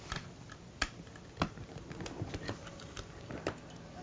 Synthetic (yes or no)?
no